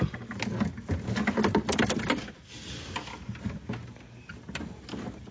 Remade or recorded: recorded